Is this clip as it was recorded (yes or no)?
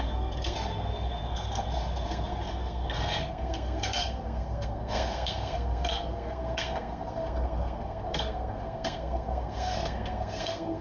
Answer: no